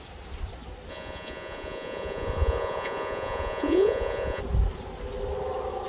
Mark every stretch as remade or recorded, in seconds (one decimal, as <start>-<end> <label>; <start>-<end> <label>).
0.0-0.9 recorded; 0.9-4.4 remade; 4.4-5.9 recorded